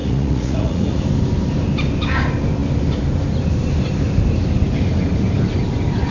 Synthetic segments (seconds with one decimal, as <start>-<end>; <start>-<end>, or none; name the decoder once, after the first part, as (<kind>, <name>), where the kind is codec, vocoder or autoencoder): 0.0-1.0 (vocoder, Vocos)